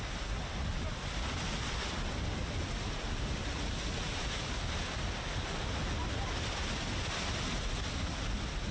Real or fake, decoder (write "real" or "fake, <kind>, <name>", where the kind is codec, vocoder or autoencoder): real